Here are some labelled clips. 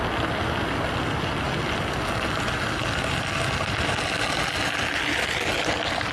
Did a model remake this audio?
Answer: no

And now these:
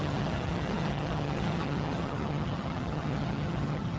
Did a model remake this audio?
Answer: yes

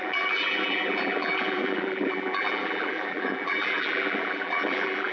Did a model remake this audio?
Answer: yes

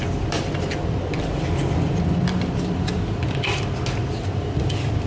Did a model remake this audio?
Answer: yes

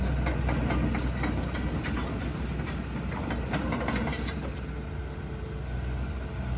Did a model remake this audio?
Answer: no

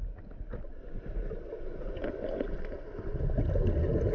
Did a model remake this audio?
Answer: no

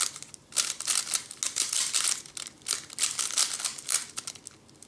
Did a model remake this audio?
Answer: no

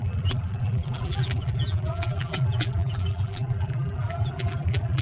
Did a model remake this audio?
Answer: yes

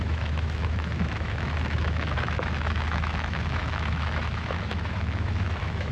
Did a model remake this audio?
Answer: yes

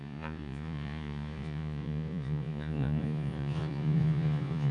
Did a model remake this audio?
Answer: yes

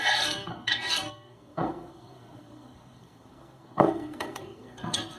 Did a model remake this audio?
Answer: yes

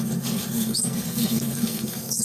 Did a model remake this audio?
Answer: yes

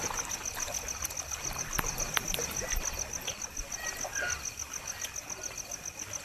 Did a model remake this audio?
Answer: no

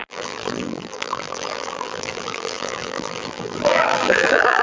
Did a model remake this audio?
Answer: yes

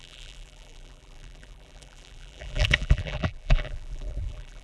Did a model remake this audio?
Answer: yes